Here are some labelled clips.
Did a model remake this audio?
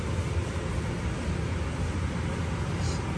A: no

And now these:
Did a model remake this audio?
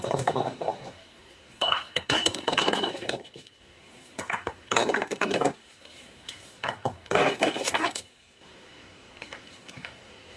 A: yes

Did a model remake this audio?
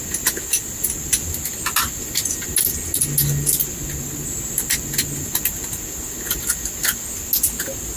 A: no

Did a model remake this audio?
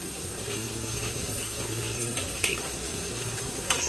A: yes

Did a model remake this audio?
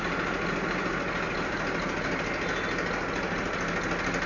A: no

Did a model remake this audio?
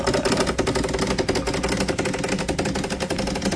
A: no